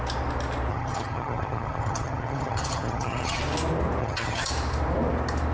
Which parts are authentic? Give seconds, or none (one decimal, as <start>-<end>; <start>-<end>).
0.0-0.7; 3.4-4.0; 4.5-5.5